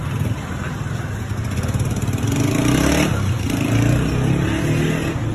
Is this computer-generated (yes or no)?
no